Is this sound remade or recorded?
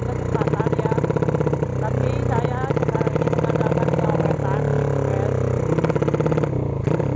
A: recorded